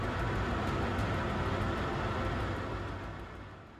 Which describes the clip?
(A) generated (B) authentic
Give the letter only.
B